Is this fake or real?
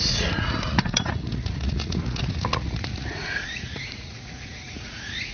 fake